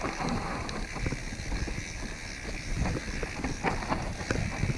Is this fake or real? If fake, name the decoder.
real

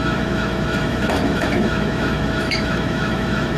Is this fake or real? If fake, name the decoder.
fake, autoencoder, DAC-VAE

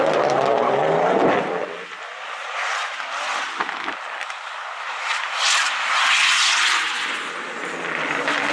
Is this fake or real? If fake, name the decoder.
real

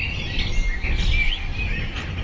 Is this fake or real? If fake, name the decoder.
real